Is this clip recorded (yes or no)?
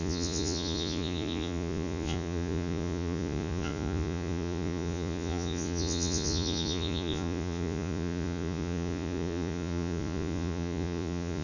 no